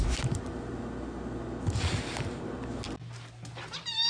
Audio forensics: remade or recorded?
recorded